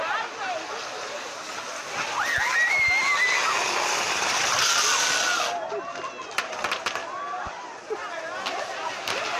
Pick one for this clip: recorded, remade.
recorded